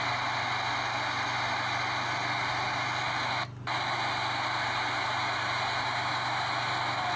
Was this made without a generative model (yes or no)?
yes